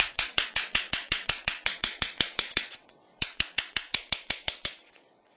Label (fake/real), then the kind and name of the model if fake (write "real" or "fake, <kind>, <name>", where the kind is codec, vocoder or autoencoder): fake, vocoder, WaveNeXt